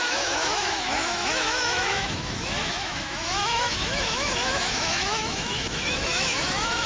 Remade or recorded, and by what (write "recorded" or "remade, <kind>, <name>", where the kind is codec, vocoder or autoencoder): remade, autoencoder, DAC-VAE